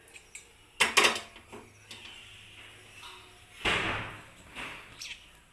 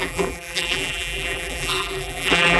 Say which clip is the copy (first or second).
second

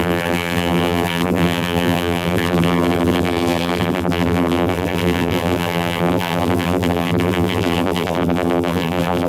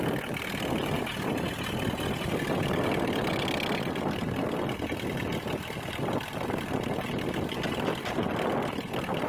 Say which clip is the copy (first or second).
first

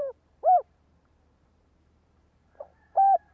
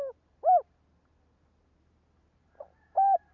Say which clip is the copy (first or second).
first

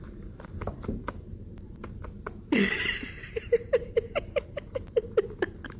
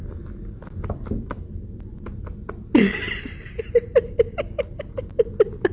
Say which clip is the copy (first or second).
first